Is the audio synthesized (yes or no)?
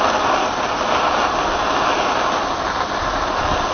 no